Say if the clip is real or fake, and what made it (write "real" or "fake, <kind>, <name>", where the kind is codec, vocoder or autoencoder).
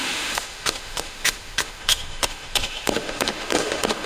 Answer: fake, autoencoder, DAC-VAE